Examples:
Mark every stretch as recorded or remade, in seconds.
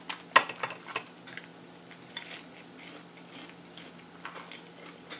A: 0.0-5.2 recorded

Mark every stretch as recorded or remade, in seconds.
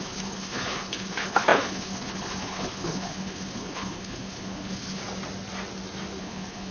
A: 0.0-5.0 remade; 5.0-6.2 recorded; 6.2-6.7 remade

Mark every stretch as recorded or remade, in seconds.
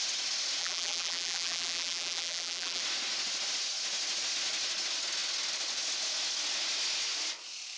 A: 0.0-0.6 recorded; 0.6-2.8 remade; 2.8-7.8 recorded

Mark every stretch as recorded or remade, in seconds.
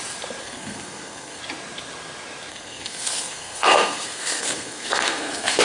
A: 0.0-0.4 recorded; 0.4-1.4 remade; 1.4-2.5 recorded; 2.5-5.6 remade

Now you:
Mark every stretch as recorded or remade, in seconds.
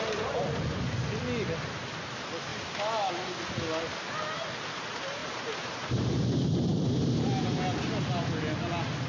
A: 0.0-5.2 recorded; 5.2-7.4 remade; 7.4-9.1 recorded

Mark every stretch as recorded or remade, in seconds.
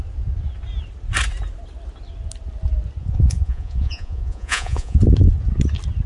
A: 0.0-3.0 recorded; 3.0-5.0 remade; 5.0-6.1 recorded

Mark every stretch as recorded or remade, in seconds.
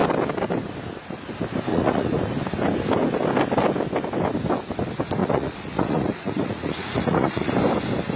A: 0.0-1.7 recorded; 1.7-2.2 remade; 2.2-5.2 recorded; 5.2-7.5 remade; 7.5-8.2 recorded